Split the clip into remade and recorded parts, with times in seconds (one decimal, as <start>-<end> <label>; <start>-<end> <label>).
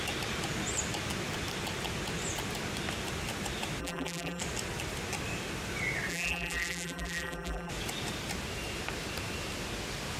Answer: 0.0-3.8 recorded; 3.8-4.4 remade; 4.4-6.1 recorded; 6.1-7.7 remade; 7.7-10.2 recorded